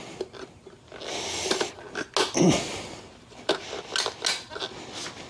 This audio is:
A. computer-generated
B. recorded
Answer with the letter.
B